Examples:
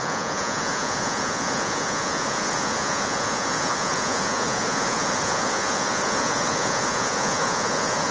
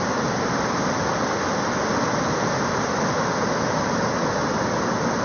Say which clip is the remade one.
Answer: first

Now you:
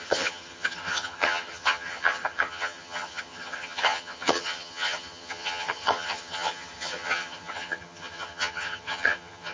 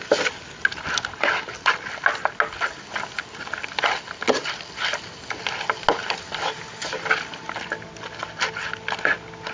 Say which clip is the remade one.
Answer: first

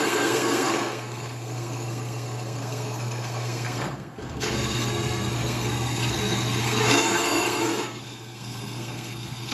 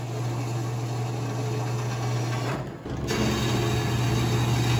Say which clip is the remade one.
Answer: first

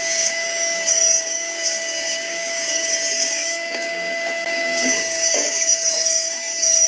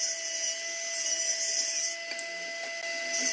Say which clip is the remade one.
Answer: first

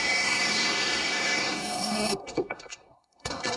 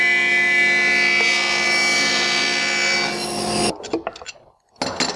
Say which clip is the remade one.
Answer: first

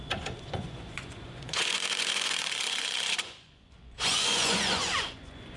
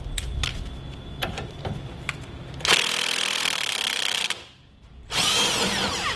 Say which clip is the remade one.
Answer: first